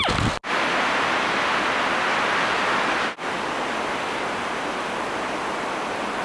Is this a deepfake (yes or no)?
no